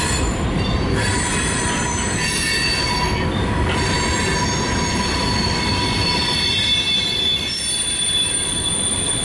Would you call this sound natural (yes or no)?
yes